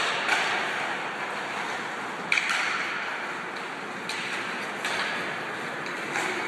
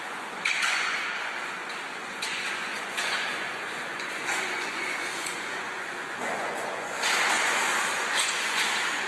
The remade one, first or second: second